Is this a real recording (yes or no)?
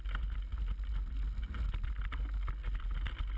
yes